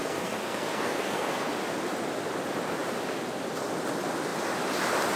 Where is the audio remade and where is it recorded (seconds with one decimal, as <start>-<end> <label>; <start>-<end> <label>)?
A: 0.0-1.5 remade; 1.5-5.2 recorded